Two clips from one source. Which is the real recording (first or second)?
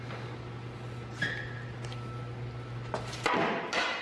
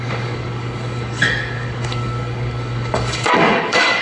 first